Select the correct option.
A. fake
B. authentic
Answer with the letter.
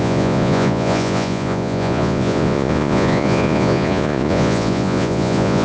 A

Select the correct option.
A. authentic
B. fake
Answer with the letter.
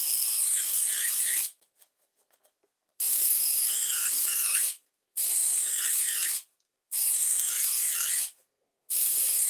B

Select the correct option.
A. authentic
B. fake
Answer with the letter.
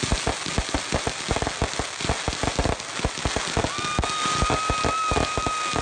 A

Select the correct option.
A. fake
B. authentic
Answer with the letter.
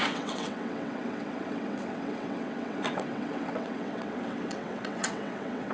A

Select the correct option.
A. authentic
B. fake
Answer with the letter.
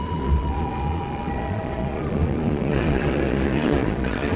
B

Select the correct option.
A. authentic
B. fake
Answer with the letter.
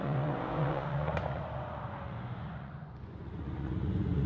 B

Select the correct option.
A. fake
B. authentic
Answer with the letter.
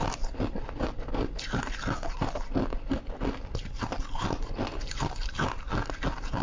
B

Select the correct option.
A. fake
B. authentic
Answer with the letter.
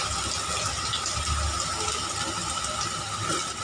B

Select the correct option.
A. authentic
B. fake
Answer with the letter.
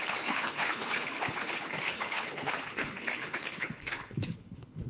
B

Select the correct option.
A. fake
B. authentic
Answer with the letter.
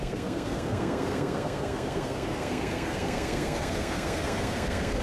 A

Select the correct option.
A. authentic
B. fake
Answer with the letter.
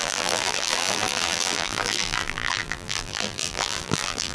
B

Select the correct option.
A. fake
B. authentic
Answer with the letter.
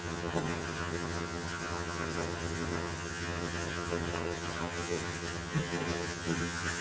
A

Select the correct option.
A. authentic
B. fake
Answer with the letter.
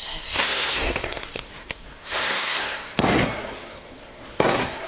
B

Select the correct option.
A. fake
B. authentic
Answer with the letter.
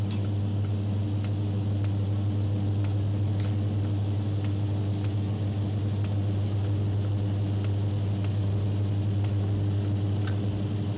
B